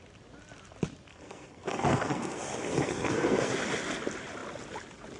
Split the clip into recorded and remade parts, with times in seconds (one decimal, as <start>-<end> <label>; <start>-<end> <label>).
0.0-1.1 recorded; 1.1-3.5 remade; 3.5-5.2 recorded